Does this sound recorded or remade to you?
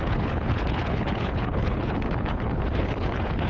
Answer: remade